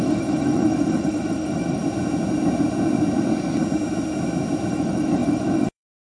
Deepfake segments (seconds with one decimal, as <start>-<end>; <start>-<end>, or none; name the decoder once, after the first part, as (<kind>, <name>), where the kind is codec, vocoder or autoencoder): 0.0-1.8 (autoencoder, DAC-VAE); 4.7-6.2